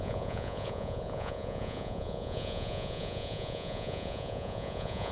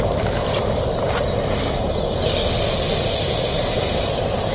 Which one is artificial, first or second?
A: first